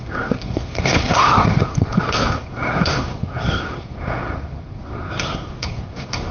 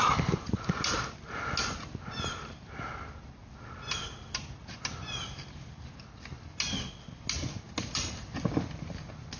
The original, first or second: second